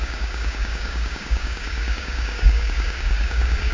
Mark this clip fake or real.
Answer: fake